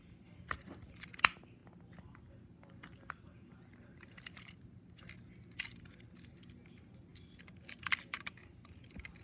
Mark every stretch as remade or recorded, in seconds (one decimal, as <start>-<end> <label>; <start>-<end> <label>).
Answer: 0.0-9.2 recorded